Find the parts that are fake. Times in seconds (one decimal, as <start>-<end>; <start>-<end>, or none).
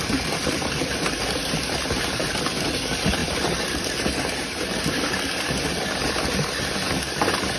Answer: none